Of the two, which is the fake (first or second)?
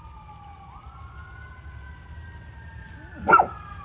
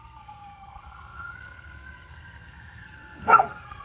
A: second